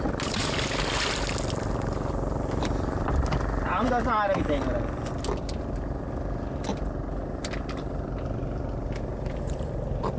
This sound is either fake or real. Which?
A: real